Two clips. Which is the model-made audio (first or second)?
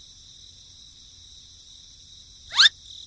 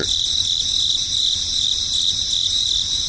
second